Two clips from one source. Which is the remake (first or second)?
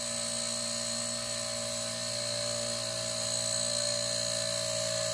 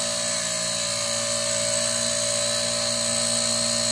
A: second